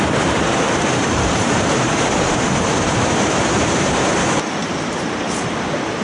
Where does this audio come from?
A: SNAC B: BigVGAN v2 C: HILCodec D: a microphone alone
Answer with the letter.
B